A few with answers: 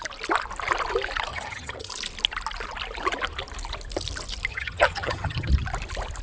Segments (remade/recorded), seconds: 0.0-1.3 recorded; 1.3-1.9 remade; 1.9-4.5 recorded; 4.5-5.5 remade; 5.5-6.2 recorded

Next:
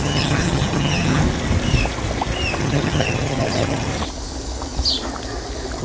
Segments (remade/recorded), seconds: 0.0-1.2 remade; 1.2-2.6 recorded; 2.6-3.9 remade; 3.9-5.8 recorded